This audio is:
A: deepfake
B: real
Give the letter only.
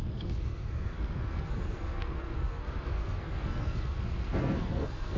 A